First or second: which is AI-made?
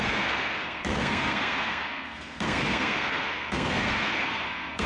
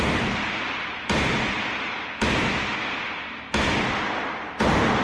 first